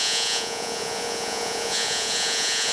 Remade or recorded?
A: remade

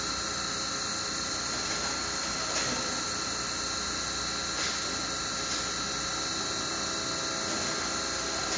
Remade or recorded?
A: recorded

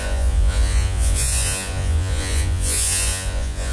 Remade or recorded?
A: remade